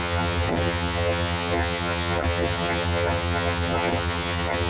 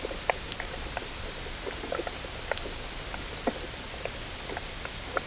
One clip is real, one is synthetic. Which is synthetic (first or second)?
first